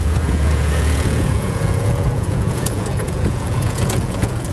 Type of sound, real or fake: fake